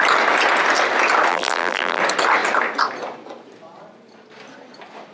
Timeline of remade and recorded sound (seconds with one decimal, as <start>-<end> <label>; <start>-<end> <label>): 0.0-1.3 recorded; 1.3-2.0 remade; 2.0-5.1 recorded